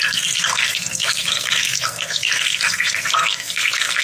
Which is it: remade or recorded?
remade